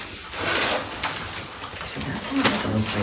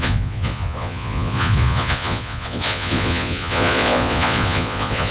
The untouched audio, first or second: first